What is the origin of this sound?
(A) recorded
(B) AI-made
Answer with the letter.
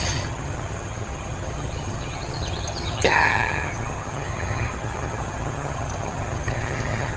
B